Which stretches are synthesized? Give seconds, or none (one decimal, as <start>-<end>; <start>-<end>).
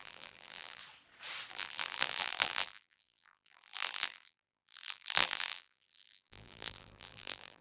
0.0-0.8; 1.5-7.6